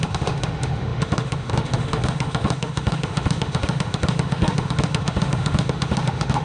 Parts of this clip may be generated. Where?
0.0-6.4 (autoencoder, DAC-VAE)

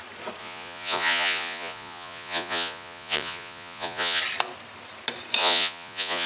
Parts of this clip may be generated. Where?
0.4-4.2 (vocoder, Vocos); 5.4-6.3

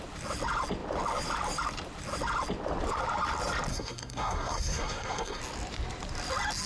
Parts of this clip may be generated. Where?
3.7-5.4 (codec, SNAC)